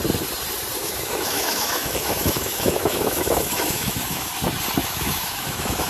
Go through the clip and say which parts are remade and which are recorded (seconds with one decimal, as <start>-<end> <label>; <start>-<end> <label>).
0.0-0.8 recorded; 0.8-4.3 remade; 4.3-4.8 recorded; 4.8-5.9 remade